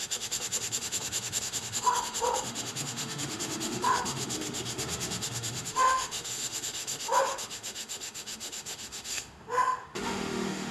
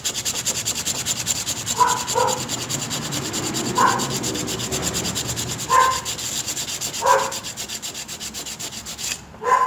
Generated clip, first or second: first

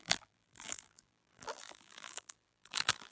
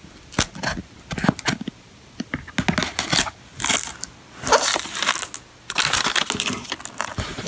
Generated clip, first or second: first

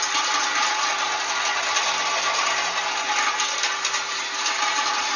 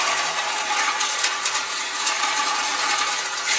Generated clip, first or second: second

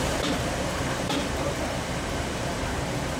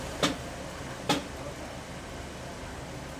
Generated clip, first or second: first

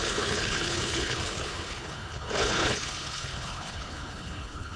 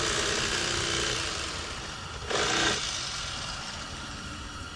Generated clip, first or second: first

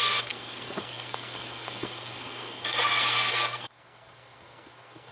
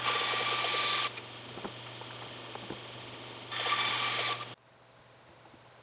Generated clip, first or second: first